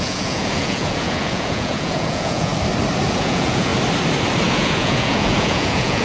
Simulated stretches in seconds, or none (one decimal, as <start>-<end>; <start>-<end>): 0.0-2.5; 3.2-3.7; 4.5-6.0